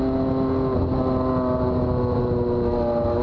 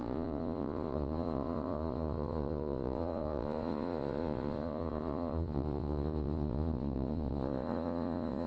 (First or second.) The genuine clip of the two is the first